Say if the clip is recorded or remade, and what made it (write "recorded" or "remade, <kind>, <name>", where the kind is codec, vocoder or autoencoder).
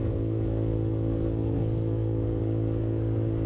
remade, codec, SNAC